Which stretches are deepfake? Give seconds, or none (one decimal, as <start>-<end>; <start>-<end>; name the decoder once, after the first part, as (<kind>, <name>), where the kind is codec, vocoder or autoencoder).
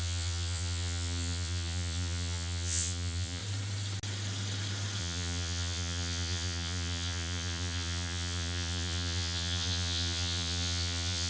0.0-3.4 (vocoder, Vocos); 5.0-11.3